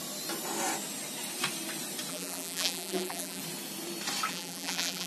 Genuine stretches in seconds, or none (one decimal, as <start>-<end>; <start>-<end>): 0.0-2.1; 3.4-4.3